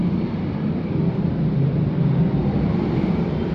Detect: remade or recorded remade